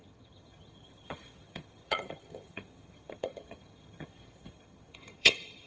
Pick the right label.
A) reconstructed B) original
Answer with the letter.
A